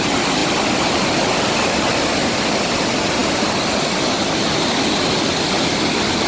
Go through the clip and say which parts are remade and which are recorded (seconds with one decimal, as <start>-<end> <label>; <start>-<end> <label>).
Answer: 0.0-6.3 recorded